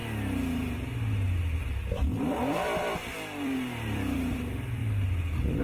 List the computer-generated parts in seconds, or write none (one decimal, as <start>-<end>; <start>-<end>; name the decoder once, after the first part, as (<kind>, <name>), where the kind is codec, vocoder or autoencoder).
1.6-4.8 (vocoder, BigVGAN v2)